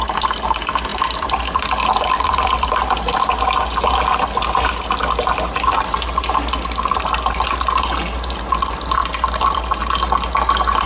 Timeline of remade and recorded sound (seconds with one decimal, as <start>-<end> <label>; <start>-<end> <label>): 0.0-0.9 recorded; 0.9-2.7 remade; 2.7-9.0 recorded; 9.0-9.8 remade; 9.8-10.9 recorded